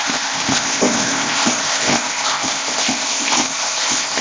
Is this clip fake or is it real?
fake